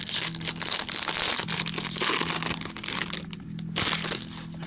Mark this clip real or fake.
real